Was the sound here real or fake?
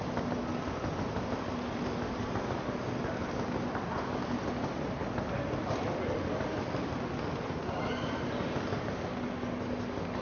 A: real